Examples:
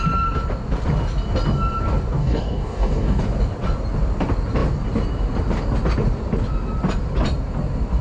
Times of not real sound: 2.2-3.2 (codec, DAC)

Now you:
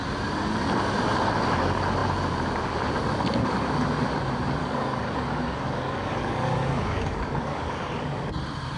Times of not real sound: 4.6-8.3 (codec, DAC)

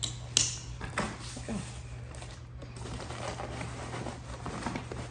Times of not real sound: none